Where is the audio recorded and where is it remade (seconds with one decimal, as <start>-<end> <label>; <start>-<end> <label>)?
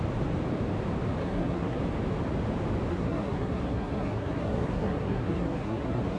0.0-1.2 recorded; 1.2-1.8 remade; 1.8-2.9 recorded; 2.9-6.2 remade